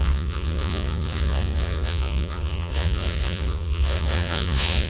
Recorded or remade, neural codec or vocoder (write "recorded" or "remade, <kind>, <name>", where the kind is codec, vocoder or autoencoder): remade, vocoder, Vocos